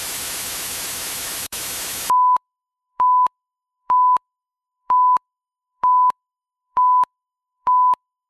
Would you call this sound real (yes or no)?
no